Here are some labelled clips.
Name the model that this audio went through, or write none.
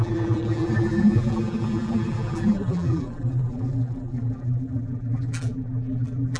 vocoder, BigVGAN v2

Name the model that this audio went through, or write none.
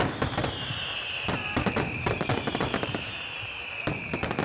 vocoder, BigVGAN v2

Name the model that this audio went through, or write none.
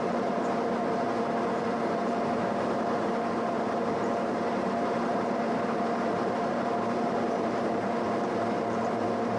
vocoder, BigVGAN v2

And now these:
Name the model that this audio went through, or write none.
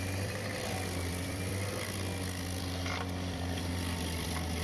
vocoder, BigVGAN v2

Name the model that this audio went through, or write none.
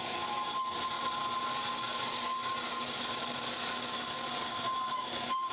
vocoder, BigVGAN v2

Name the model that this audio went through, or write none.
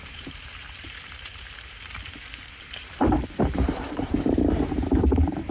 vocoder, BigVGAN v2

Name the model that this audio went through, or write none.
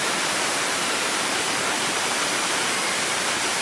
vocoder, BigVGAN v2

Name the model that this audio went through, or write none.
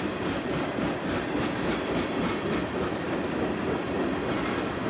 none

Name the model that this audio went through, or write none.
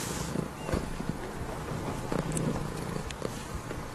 none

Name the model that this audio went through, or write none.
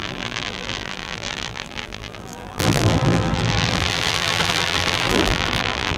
vocoder, BigVGAN v2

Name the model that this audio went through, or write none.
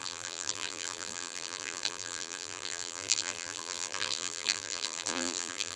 vocoder, BigVGAN v2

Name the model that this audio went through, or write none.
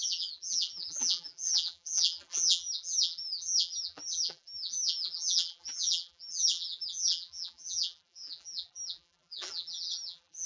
vocoder, BigVGAN v2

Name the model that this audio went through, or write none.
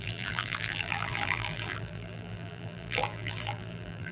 vocoder, BigVGAN v2